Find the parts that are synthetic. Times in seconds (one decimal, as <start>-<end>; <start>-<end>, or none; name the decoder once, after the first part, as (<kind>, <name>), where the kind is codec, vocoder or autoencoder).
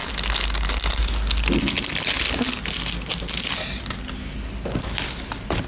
none